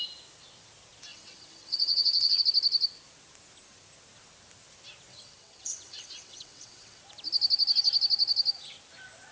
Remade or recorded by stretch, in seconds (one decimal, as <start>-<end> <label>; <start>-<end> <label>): 0.0-1.1 recorded; 1.1-2.4 remade; 2.4-5.1 recorded; 5.1-7.0 remade; 7.0-9.3 recorded